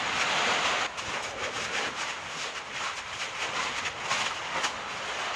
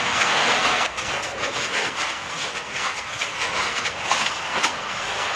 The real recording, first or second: first